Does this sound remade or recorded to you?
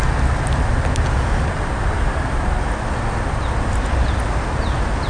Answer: recorded